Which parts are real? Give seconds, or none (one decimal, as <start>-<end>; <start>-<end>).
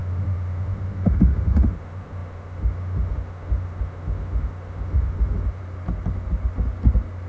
5.6-7.3